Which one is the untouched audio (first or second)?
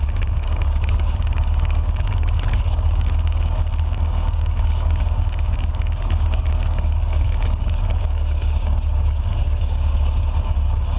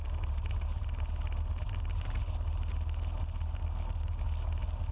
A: second